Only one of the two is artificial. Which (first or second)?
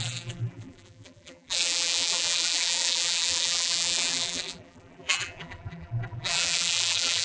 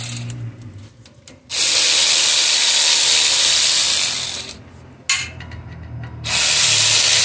first